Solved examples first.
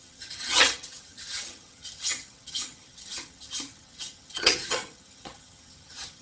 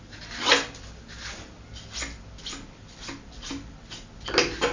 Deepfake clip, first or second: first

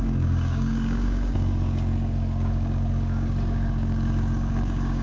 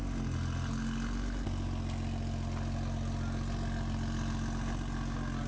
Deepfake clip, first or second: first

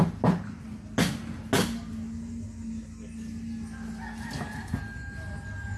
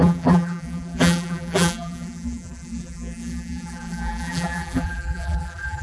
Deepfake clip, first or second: second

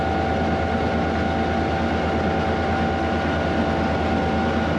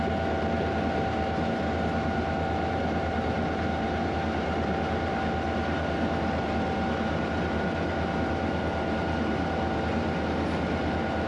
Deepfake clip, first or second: second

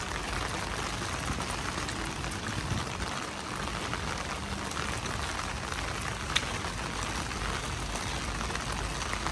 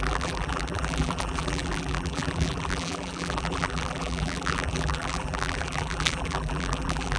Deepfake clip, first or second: second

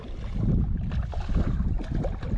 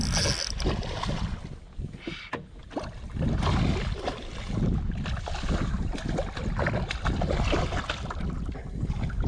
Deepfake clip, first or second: first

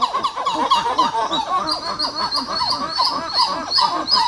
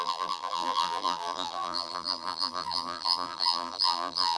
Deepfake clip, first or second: second